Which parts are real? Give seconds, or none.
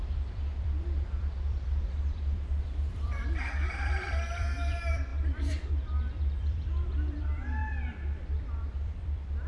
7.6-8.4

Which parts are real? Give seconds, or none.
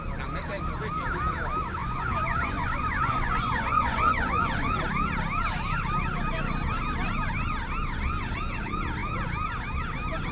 0.0-1.8; 4.8-10.3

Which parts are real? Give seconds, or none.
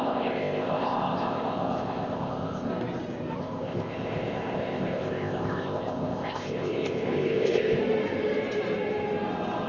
2.7-3.4; 7.8-9.7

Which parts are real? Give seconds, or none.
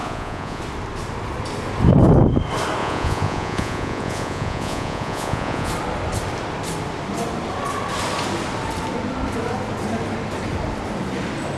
0.6-2.8; 5.7-11.6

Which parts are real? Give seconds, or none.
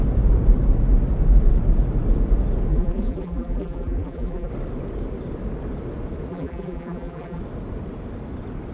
0.0-2.7; 4.5-6.3; 7.4-8.7